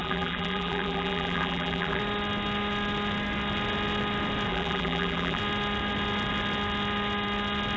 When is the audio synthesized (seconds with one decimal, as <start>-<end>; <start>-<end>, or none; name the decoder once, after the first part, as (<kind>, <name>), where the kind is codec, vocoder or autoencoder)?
0.0-2.0 (vocoder, BigVGAN v2); 4.5-5.4